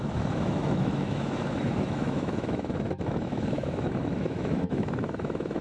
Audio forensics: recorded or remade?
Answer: remade